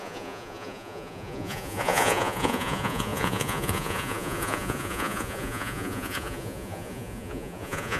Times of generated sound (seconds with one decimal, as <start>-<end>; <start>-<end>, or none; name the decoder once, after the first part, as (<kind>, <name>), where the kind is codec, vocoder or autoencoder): 0.0-8.0 (vocoder, Vocos)